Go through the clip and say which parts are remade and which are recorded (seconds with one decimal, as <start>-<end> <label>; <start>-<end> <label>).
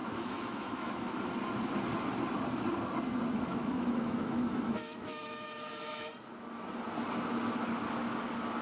0.0-1.3 remade; 1.3-3.5 recorded; 3.5-6.1 remade; 6.1-8.6 recorded